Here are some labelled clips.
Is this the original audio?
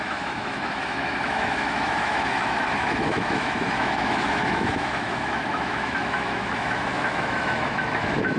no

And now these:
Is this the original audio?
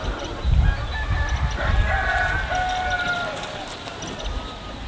yes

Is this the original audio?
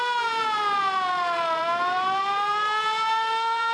no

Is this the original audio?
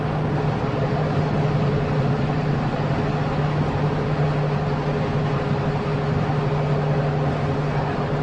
yes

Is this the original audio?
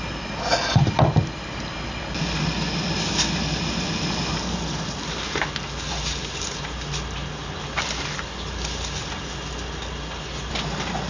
yes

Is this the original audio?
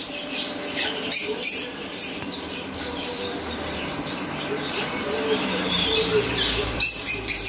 no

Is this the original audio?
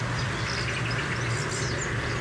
yes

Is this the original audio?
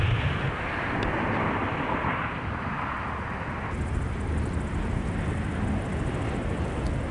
yes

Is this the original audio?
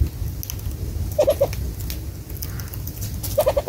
yes